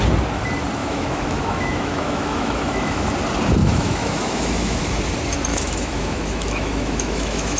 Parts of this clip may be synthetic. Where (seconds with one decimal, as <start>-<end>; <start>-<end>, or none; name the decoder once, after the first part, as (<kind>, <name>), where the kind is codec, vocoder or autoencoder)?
0.8-3.1 (autoencoder, DAC-VAE); 3.6-4.8; 5.5-7.6